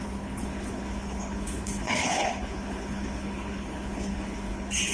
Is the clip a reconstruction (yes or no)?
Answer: yes